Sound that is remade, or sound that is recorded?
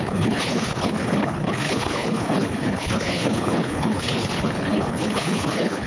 remade